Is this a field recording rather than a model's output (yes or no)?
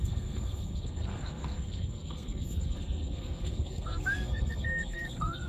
no